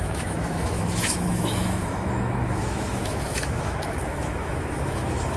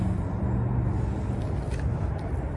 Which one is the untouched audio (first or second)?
second